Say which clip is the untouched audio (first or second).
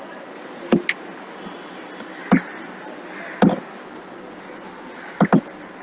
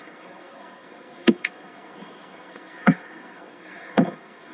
first